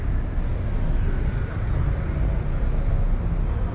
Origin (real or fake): real